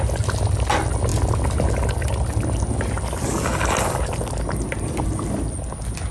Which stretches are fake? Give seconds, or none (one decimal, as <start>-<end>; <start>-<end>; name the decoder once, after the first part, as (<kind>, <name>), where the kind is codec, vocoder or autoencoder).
none